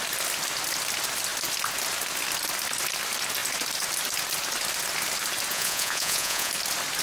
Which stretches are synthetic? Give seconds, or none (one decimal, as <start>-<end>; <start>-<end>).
5.5-6.5